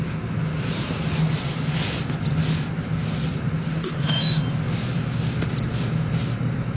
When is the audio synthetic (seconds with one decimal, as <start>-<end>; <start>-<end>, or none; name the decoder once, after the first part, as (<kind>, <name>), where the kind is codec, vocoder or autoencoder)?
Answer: 3.7-4.4 (autoencoder, DAC-VAE)